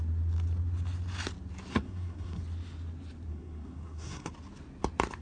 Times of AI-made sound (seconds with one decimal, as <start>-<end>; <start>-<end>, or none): 1.7-2.4; 3.3-4.3